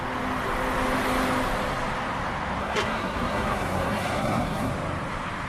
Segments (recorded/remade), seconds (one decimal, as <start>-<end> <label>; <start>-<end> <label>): 0.0-2.6 recorded; 2.6-4.7 remade; 4.7-5.5 recorded